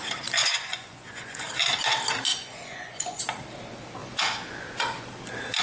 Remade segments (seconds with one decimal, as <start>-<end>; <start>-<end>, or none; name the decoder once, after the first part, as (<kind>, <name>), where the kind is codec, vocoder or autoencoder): 0.4-1.5 (vocoder, Vocos); 2.3-3.2; 4.0-5.1

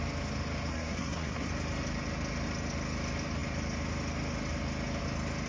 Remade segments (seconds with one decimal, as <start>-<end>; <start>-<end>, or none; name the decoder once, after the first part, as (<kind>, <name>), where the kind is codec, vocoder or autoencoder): 0.7-1.5 (codec, SNAC)